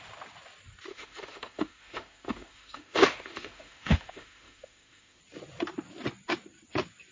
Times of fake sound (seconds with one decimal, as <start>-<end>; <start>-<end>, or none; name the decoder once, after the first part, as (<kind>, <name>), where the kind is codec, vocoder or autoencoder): 0.9-5.2 (autoencoder, DAC-VAE)